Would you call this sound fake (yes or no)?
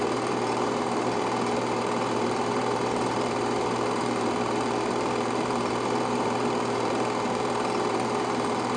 yes